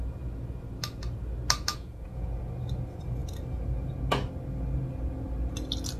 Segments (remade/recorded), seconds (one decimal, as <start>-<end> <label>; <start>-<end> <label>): 0.0-1.7 recorded; 1.7-2.4 remade; 2.4-6.0 recorded